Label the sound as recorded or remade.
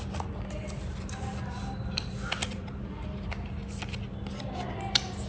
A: recorded